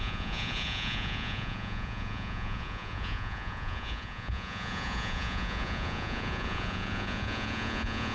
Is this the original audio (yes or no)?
no